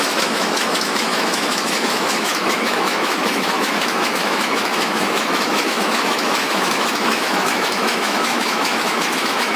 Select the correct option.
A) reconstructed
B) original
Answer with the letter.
A